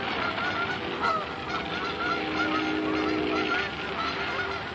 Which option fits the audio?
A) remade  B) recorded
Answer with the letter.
B